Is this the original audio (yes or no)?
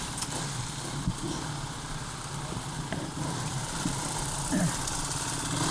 yes